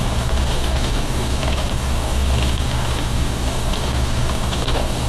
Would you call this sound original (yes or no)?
no